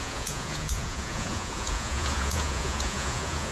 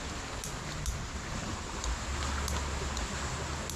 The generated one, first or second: first